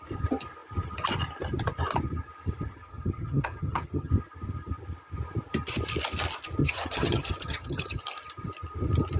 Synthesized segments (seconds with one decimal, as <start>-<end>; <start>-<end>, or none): 2.7-4.1; 6.6-8.0